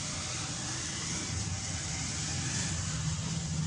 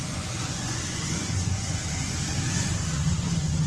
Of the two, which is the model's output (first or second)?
second